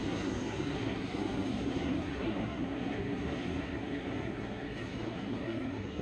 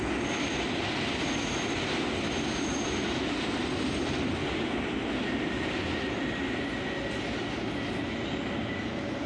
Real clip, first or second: second